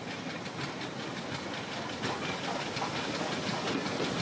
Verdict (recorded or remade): recorded